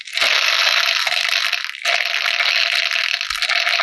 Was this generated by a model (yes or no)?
no